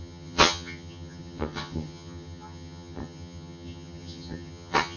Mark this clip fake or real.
fake